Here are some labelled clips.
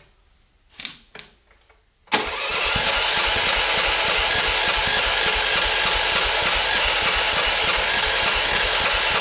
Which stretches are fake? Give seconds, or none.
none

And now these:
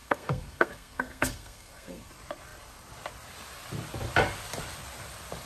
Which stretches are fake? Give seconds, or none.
0.0-2.1 (codec, SNAC)

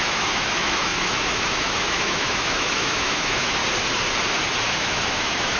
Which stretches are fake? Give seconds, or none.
0.0-3.6 (autoencoder, DAC-VAE); 4.7-5.6

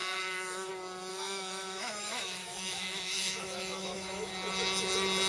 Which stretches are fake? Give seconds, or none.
0.0-0.7 (autoencoder, DAC-VAE); 1.1-4.3

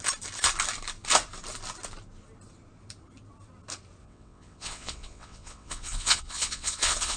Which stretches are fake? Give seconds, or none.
4.0-7.2 (vocoder, WaveNeXt)

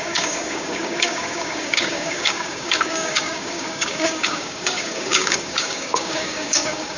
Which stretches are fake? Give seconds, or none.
0.0-7.0 (codec, DAC)

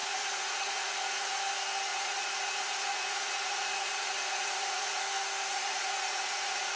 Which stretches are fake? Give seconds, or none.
0.0-1.4 (vocoder, Vocos); 1.9-5.0; 5.5-6.8